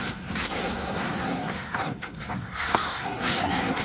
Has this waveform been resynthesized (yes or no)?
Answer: yes